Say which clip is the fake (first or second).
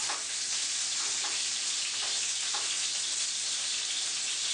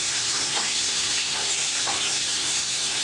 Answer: second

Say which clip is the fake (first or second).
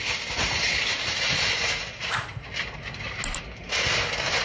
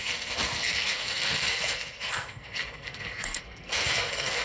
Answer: second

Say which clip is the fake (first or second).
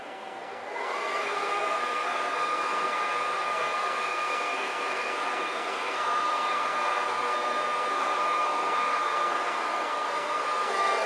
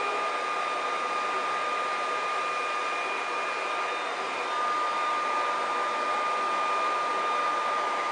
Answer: first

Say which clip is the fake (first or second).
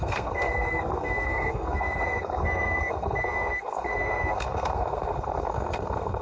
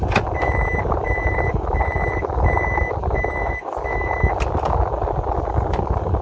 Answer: first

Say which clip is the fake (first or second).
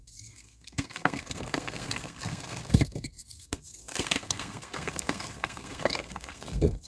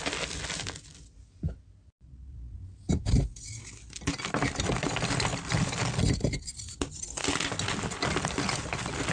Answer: first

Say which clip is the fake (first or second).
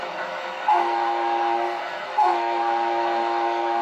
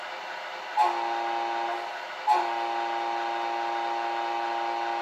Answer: first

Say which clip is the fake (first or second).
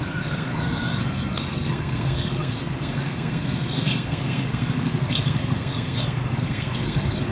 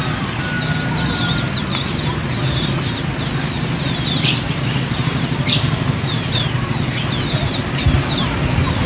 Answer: first